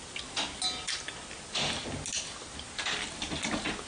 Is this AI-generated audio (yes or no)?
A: no